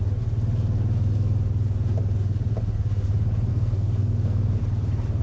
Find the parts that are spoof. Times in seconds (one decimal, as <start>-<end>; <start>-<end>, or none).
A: 3.5-4.6